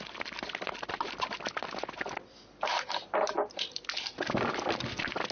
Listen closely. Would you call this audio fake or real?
real